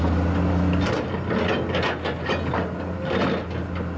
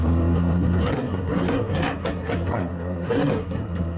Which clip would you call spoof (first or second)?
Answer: second